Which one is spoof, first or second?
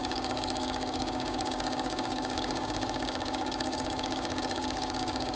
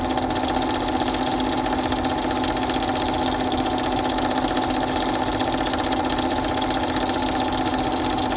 first